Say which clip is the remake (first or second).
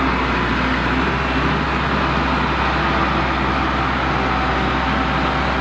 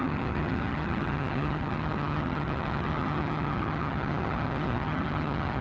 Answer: second